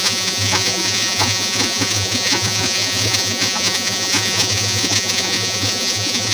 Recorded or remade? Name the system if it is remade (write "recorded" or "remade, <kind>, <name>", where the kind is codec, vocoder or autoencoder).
remade, vocoder, Vocos